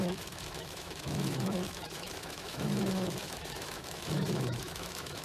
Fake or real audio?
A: fake